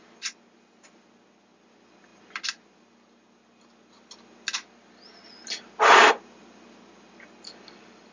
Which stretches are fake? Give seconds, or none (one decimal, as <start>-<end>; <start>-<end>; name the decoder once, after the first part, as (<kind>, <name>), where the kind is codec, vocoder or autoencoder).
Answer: none